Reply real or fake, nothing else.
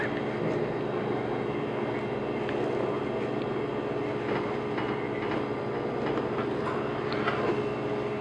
real